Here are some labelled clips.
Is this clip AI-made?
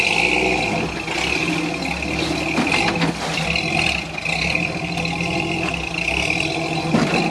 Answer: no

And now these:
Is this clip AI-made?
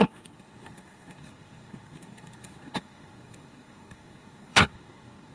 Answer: yes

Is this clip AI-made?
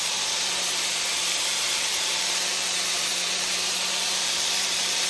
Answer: yes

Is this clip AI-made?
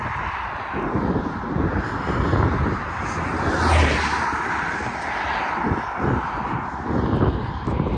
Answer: no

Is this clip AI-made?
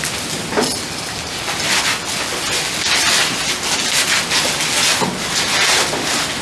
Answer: no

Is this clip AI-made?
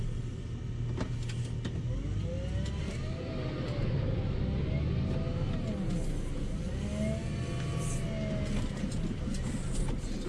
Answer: no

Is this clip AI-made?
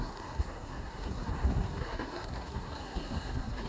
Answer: yes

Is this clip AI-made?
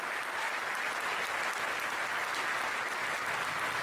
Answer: no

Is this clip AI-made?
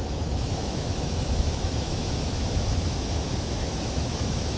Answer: yes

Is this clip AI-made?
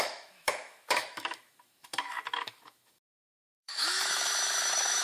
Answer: yes